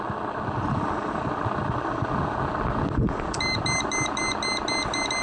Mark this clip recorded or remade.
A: recorded